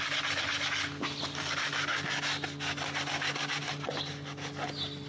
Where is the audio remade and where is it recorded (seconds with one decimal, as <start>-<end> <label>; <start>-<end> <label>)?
0.0-5.1 recorded